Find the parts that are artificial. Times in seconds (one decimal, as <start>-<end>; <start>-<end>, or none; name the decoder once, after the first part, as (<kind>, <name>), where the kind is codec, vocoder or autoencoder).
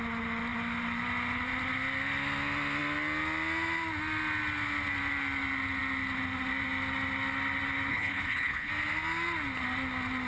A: 7.9-8.7 (codec, HILCodec)